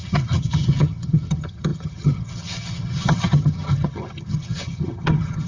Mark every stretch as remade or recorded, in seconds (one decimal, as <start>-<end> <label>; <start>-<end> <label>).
0.0-5.5 remade